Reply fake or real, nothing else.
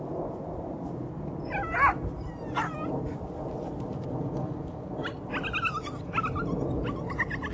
real